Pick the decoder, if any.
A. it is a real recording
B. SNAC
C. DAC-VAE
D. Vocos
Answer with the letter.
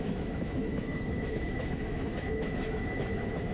C